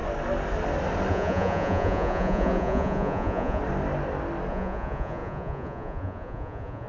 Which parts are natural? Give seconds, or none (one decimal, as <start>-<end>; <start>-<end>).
0.0-1.1; 3.6-4.5